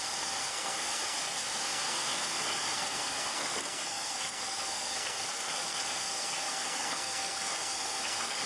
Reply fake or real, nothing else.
fake